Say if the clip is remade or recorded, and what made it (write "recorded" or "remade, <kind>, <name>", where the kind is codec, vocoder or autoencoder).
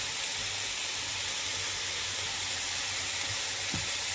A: recorded